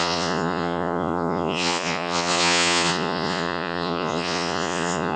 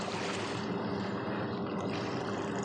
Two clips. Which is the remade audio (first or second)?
first